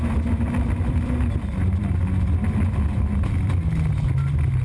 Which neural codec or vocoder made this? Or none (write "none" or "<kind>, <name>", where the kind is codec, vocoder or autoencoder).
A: none